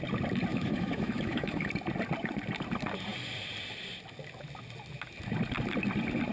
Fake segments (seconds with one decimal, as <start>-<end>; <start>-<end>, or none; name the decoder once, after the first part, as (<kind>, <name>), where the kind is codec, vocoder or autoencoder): 0.5-1.7 (autoencoder, DAC-VAE)